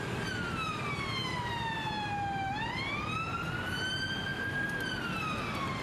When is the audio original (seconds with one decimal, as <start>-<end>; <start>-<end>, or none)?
0.0-4.3; 5.1-5.8